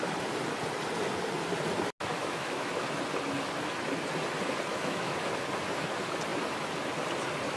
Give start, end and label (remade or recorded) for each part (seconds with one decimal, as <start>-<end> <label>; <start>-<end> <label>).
0.0-2.1 recorded; 2.1-2.7 remade; 2.7-4.7 recorded; 4.7-5.3 remade; 5.3-7.6 recorded